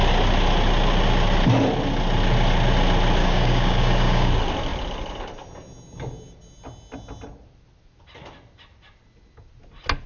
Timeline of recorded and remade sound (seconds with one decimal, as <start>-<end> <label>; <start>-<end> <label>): 0.0-3.2 recorded; 3.2-4.3 remade; 4.3-10.1 recorded